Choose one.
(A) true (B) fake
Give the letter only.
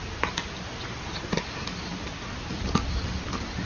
A